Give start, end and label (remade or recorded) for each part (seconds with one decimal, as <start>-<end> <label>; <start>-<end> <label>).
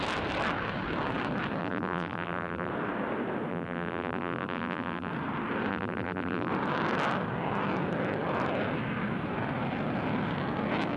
0.0-1.6 recorded; 1.6-2.7 remade; 2.7-3.5 recorded; 3.5-5.1 remade; 5.1-5.7 recorded; 5.7-6.5 remade; 6.5-11.0 recorded